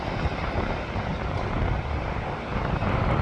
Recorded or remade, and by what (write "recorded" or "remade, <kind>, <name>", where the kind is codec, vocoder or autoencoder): recorded